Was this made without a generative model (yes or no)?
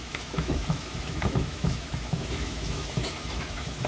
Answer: no